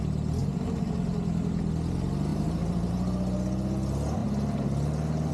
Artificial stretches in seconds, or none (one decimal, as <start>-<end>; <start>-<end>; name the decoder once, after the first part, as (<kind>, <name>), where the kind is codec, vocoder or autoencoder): 0.4-0.9 (vocoder, BigVGAN v2); 2.3-2.9; 4.2-5.3